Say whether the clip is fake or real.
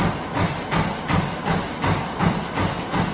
real